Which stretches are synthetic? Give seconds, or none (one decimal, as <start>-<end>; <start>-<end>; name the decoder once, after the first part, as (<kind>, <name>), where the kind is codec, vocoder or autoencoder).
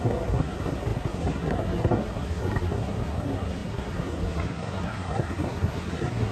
0.0-6.3 (codec, SNAC)